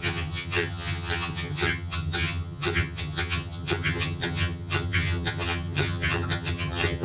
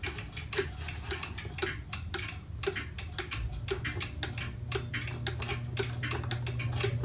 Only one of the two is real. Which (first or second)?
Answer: second